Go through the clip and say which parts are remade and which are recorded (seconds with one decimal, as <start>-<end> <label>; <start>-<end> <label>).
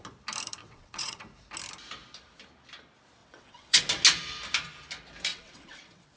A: 0.0-0.6 recorded; 0.6-1.2 remade; 1.2-3.2 recorded; 3.2-3.8 remade; 3.8-5.3 recorded; 5.3-6.2 remade